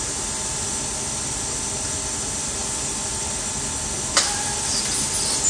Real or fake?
real